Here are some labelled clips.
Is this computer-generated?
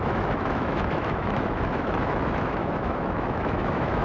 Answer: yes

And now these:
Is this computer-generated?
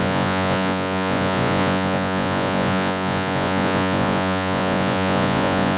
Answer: yes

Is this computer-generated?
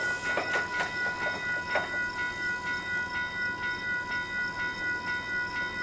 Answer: no